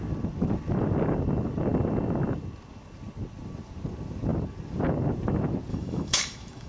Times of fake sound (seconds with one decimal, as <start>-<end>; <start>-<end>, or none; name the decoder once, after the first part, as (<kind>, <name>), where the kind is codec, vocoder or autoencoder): 5.7-6.7 (autoencoder, DAC-VAE)